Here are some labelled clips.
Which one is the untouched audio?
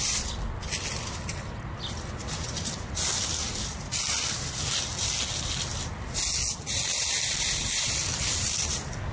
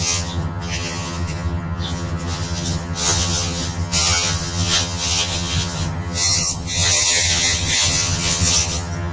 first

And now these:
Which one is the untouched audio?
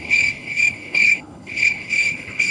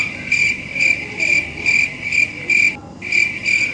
second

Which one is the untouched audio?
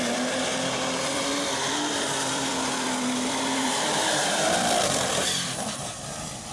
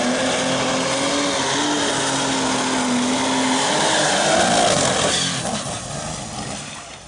second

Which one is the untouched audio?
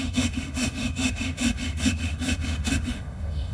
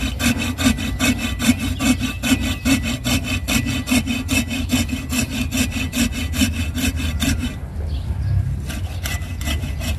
second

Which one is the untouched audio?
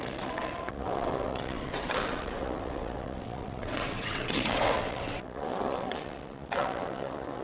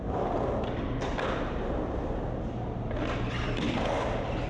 second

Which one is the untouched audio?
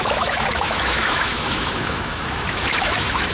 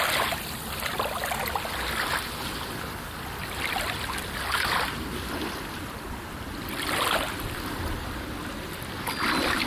second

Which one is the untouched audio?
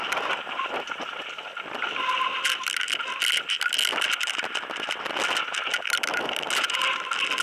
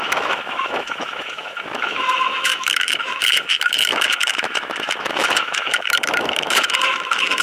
first